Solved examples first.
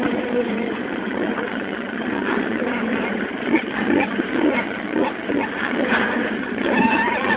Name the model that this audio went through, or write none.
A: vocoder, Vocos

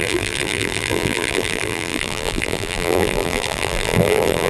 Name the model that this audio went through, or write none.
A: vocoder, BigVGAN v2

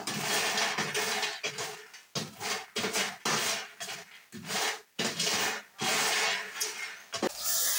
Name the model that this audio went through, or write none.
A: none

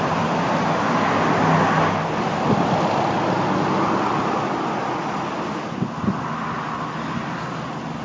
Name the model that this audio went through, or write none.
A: none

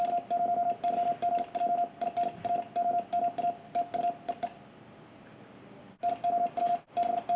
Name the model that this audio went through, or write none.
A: none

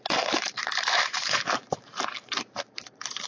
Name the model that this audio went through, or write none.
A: vocoder, BigVGAN v2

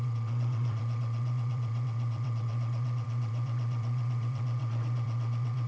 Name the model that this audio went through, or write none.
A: vocoder, WaveNeXt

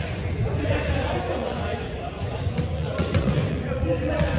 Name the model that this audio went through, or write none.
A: vocoder, Vocos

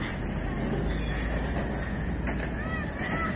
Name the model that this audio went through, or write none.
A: none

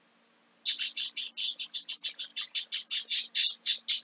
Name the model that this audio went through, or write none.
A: none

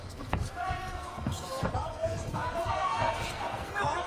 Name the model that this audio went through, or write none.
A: codec, SNAC